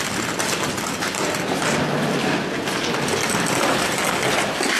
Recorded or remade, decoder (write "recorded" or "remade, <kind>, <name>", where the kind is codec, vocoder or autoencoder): recorded